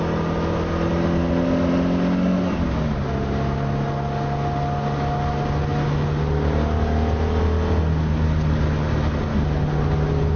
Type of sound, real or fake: real